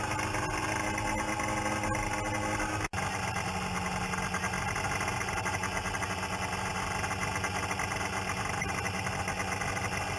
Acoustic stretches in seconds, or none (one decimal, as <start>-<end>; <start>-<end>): 0.0-10.2